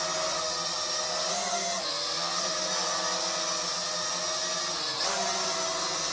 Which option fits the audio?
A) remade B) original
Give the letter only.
B